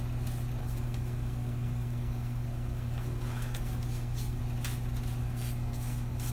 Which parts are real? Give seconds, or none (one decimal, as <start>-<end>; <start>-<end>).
0.0-0.6; 4.4-5.2